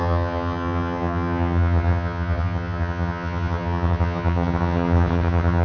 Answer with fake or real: fake